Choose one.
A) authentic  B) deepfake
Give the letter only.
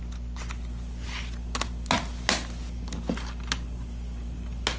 A